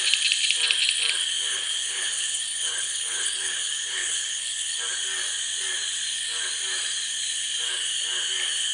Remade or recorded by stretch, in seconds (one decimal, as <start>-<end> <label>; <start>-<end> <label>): 0.0-1.5 recorded; 1.5-4.8 remade; 4.8-8.7 recorded